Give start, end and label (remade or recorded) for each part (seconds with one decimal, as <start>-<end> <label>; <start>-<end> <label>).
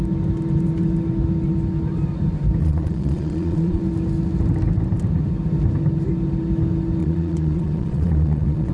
0.0-2.6 recorded; 2.6-3.8 remade; 3.8-7.0 recorded; 7.0-8.7 remade